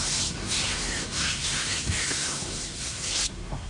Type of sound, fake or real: fake